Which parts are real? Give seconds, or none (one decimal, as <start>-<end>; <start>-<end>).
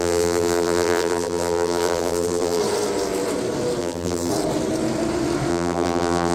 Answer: 2.6-3.8; 4.3-5.5